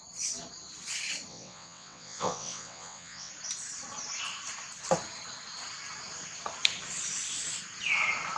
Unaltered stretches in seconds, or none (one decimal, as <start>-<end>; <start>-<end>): 0.0-1.3; 3.3-8.4